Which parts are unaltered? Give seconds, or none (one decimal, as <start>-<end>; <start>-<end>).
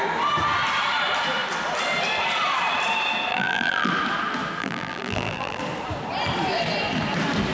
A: 0.0-3.3; 3.9-4.6; 5.6-7.5